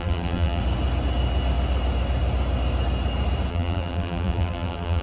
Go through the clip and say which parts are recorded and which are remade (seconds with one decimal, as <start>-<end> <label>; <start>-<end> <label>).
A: 0.0-0.6 remade; 0.6-3.5 recorded; 3.5-5.0 remade